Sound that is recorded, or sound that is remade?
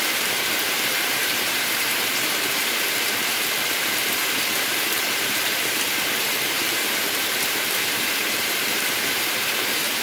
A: remade